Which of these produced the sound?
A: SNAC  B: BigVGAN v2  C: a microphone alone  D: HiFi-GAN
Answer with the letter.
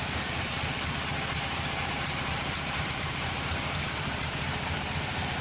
B